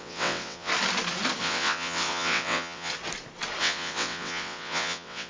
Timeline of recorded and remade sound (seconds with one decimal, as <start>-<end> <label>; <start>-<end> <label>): 0.0-0.7 remade; 0.7-1.4 recorded; 1.4-2.9 remade; 2.9-3.6 recorded; 3.6-5.3 remade

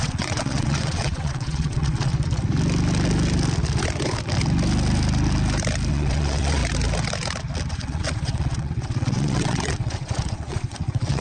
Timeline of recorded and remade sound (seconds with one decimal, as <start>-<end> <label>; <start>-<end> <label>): 0.0-2.1 remade; 2.1-5.9 recorded; 5.9-6.6 remade; 6.6-7.7 recorded; 7.7-11.2 remade

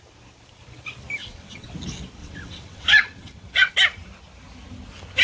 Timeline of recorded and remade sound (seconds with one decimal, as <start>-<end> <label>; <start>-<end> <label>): 0.0-1.2 recorded; 1.2-1.7 remade; 1.7-2.2 recorded; 2.2-3.7 remade; 3.7-5.2 recorded

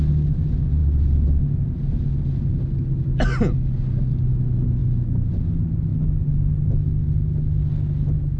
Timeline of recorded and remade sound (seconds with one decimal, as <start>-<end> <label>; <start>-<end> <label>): 0.0-8.4 recorded